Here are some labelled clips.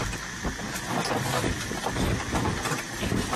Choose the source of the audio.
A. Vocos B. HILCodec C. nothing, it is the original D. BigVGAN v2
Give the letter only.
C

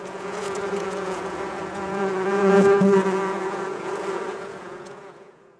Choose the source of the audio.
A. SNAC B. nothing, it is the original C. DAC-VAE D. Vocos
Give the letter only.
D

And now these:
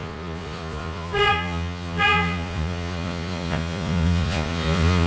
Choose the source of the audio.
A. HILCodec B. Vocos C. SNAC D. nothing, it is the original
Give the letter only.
B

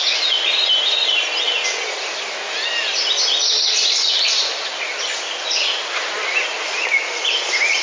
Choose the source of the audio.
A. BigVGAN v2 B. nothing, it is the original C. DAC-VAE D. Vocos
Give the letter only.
B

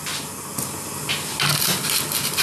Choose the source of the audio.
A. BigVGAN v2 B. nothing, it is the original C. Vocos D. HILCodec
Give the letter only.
B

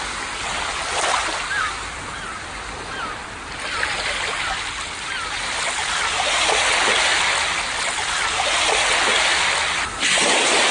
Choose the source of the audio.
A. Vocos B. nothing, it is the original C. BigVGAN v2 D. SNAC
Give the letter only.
B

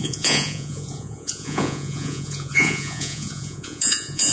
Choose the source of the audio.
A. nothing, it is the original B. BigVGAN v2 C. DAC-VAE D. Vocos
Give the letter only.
D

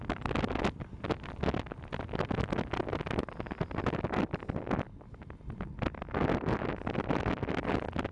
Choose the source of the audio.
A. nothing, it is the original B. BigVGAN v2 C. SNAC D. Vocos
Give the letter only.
A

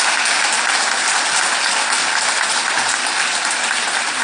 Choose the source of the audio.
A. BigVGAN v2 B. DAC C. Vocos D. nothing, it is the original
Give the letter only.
D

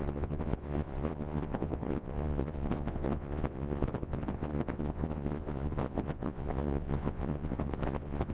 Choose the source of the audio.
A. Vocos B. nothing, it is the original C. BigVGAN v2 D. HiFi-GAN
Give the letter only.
A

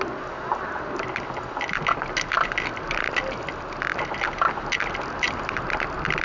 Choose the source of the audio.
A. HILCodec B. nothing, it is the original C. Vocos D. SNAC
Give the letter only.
B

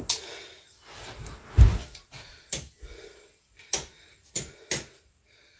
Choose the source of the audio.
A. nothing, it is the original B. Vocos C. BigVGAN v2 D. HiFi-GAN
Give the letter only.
A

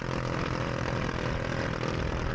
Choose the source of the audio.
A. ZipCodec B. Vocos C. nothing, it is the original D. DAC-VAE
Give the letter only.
C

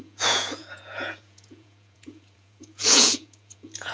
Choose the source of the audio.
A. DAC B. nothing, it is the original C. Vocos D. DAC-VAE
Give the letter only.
C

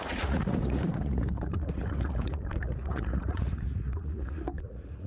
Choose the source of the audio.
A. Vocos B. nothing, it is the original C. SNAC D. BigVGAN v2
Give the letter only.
A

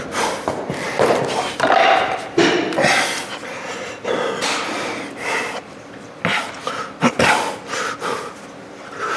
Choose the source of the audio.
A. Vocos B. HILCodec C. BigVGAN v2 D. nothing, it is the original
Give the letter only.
D